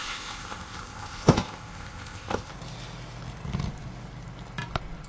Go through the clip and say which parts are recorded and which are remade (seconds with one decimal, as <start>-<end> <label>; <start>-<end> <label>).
0.0-2.5 remade; 2.5-5.1 recorded